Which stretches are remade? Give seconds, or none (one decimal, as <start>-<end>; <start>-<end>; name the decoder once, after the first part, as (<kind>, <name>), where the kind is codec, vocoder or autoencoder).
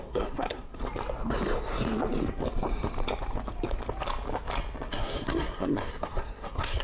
0.0-0.8 (codec, SNAC); 4.9-6.8